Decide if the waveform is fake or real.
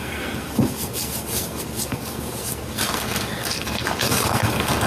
fake